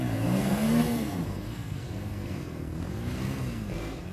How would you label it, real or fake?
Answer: fake